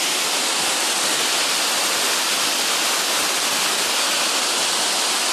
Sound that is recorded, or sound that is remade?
recorded